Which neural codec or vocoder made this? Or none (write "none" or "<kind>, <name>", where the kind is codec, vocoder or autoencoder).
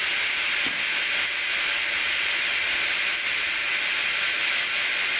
none